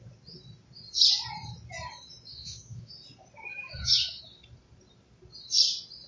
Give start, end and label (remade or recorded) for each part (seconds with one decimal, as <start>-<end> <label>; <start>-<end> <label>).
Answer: 0.0-2.3 recorded; 2.3-2.9 remade; 2.9-3.5 recorded; 3.5-4.2 remade; 4.2-6.1 recorded